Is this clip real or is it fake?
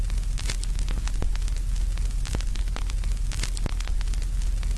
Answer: real